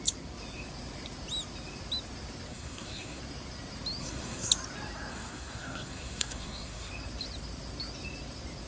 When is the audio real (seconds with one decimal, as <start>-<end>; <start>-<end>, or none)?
0.0-2.5; 3.2-4.0; 4.5-5.1; 6.9-8.7